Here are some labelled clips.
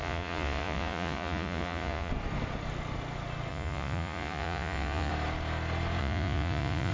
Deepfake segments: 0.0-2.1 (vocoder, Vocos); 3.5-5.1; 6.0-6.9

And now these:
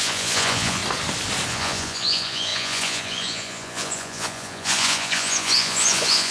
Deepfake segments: 0.0-0.8 (vocoder, Vocos); 1.5-6.3

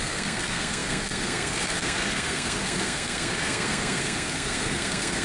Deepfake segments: 0.0-5.2 (codec, SNAC)

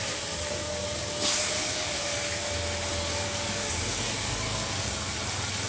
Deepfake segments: 0.5-2.5 (codec, DAC); 2.9-5.2

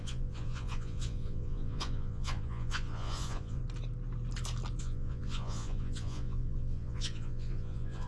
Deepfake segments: 0.0-3.6 (vocoder, Vocos); 4.8-8.1

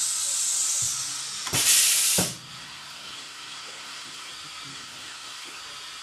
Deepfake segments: 2.6-4.3 (codec, SNAC); 4.7-5.6